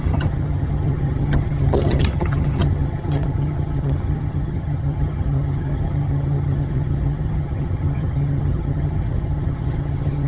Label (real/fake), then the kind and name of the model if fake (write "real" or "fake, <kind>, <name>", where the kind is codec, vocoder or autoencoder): fake, vocoder, HiFi-GAN